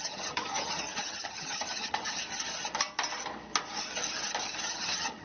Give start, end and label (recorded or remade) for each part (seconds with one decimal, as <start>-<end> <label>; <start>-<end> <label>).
0.0-2.2 remade; 2.2-4.7 recorded; 4.7-5.2 remade